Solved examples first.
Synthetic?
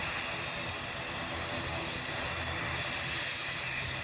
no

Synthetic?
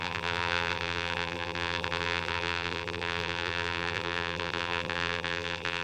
yes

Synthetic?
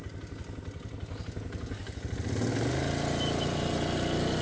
no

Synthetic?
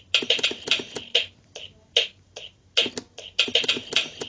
no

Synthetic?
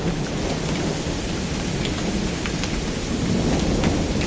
no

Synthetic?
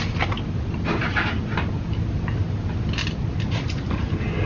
no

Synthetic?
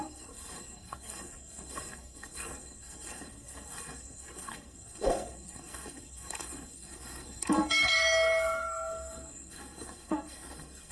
yes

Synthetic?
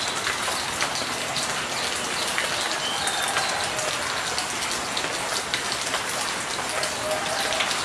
no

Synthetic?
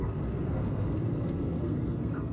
yes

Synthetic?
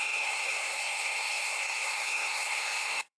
yes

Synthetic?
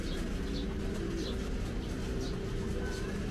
no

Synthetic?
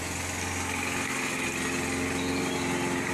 no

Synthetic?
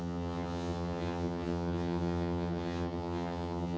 yes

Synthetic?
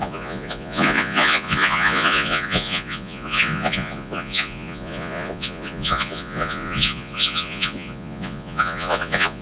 yes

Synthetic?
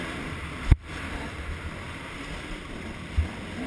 no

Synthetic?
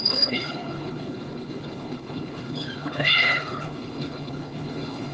yes